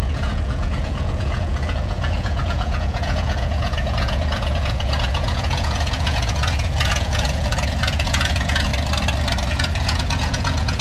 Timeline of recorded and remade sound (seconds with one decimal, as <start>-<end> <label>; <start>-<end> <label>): 0.0-8.7 remade; 8.7-9.5 recorded; 9.5-10.8 remade